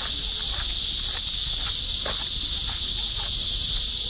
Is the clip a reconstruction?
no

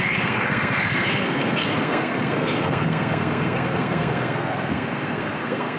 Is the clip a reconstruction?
yes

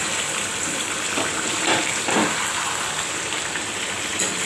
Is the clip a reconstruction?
yes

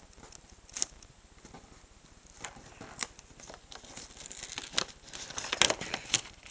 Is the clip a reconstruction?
no